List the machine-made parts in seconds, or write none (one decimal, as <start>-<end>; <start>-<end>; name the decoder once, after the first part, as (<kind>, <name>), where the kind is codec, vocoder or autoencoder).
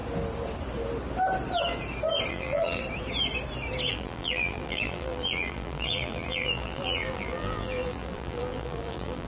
2.3-2.8 (vocoder, BigVGAN v2); 3.9-9.3